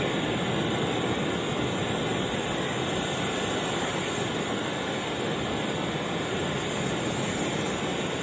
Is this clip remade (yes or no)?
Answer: no